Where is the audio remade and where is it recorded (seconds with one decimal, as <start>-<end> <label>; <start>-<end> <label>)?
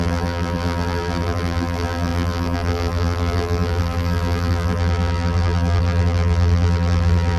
0.0-7.4 remade